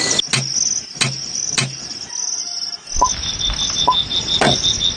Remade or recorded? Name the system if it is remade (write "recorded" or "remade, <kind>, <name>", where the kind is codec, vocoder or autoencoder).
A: recorded